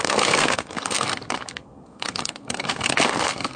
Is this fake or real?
fake